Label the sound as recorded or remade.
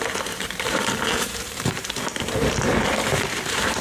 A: remade